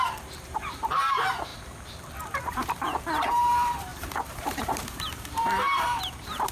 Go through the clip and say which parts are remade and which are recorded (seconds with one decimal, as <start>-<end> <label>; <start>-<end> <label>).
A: 0.0-1.5 remade; 1.5-2.5 recorded; 2.5-6.5 remade